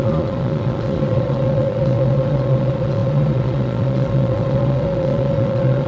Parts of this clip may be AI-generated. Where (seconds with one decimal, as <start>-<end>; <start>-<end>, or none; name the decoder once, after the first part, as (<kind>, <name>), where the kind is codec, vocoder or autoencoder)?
0.0-5.9 (vocoder, Vocos)